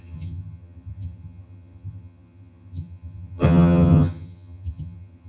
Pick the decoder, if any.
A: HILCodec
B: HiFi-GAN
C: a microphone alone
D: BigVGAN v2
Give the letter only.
B